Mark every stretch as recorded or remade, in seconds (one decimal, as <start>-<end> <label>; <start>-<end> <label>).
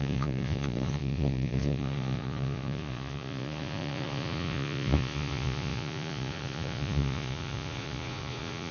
0.0-8.7 remade